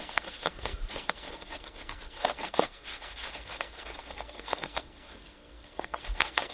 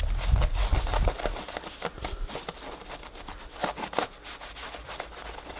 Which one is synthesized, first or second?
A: first